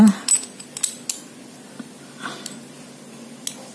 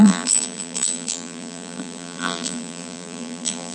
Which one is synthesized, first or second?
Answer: second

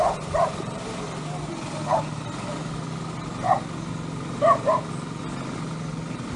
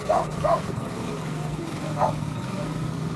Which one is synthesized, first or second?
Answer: second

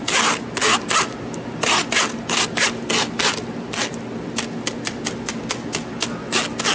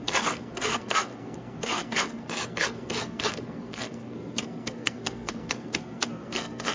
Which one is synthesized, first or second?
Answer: second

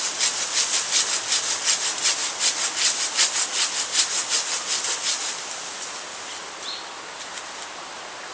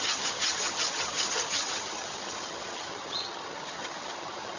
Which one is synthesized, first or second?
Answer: second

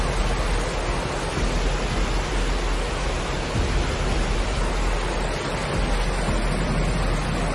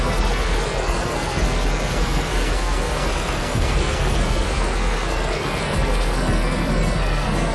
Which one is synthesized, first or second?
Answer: second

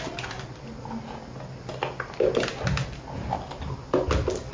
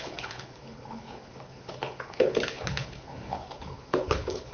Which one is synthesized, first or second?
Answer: second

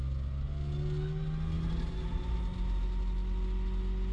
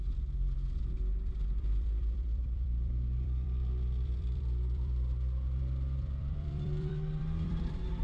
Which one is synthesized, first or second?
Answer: second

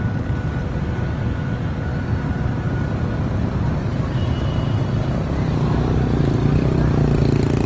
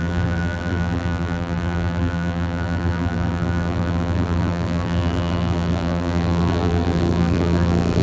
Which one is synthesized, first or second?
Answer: second